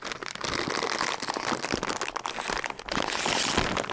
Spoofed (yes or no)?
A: no